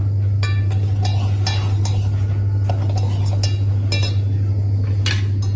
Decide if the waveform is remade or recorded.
recorded